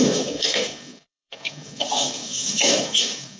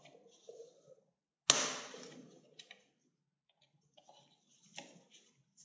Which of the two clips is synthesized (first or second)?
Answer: first